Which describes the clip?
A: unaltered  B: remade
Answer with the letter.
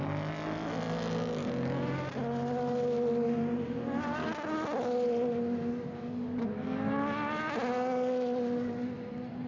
A